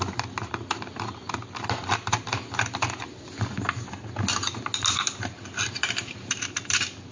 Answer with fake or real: real